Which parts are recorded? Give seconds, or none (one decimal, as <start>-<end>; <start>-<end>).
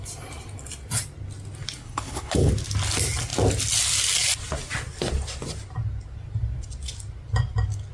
0.0-1.8; 2.5-7.9